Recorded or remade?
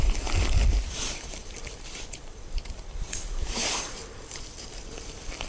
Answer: remade